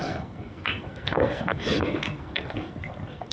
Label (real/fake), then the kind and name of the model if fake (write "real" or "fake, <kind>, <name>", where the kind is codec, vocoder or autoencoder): fake, codec, SNAC